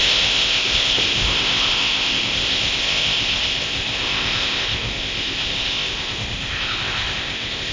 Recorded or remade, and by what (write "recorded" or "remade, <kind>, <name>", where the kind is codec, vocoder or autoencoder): remade, codec, ZipCodec